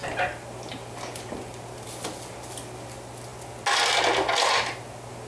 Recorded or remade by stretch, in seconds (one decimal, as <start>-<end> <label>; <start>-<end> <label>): 0.0-5.3 recorded